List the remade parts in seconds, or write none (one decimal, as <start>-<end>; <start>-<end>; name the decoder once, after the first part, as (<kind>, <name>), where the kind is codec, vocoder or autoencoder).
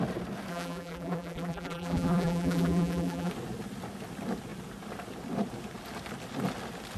0.5-3.3 (vocoder, BigVGAN v2)